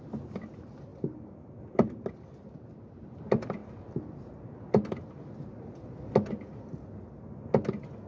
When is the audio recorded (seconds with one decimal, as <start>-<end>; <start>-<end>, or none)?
0.0-8.1